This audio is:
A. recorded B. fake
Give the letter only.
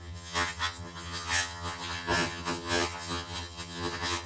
B